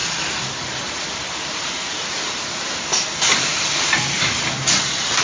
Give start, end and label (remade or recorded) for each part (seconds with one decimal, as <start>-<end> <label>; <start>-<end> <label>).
0.0-1.2 recorded; 1.2-4.3 remade; 4.3-5.2 recorded